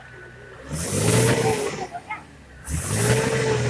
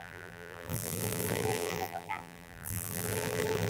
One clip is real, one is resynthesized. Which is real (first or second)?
first